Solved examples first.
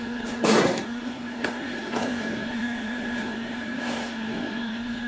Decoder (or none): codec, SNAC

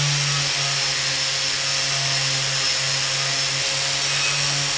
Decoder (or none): none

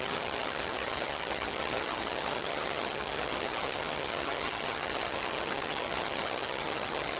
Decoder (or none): vocoder, HiFi-GAN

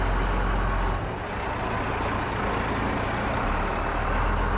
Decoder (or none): none